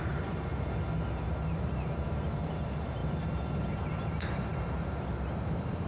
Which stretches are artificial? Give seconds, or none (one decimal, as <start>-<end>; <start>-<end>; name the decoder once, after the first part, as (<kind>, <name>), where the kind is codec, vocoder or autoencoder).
0.0-0.5 (vocoder, BigVGAN v2); 1.2-5.9